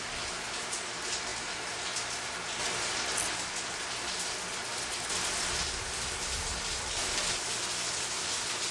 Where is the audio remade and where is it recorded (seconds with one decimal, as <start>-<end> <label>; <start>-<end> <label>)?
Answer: 0.0-8.7 recorded